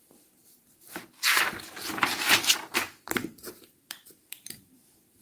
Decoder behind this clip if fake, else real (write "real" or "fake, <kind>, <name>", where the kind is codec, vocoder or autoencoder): fake, vocoder, BigVGAN v2